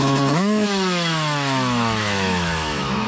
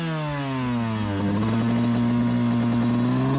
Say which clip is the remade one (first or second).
first